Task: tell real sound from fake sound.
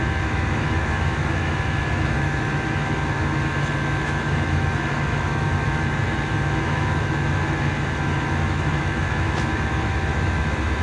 fake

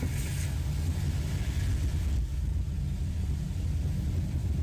real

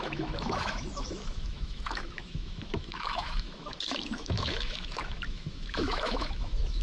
fake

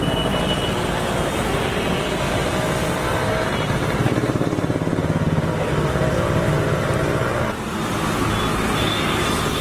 real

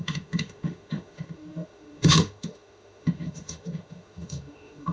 fake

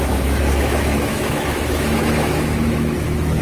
fake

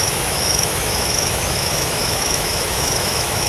fake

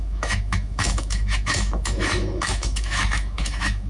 fake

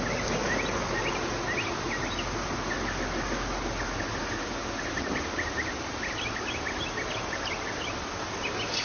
real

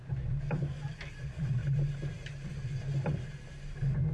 real